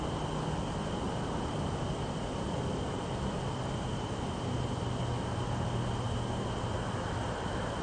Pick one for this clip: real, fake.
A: real